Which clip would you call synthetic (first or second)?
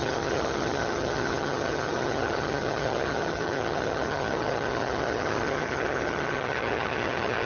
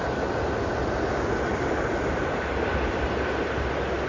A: first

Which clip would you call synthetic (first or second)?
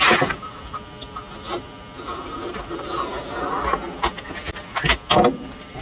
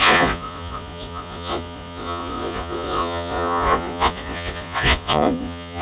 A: second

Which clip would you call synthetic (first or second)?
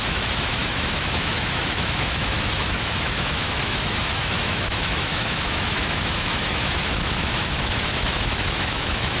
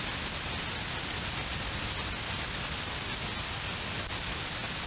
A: first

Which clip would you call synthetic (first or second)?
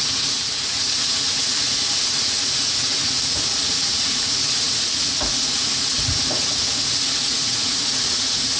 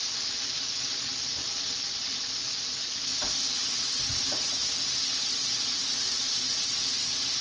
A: first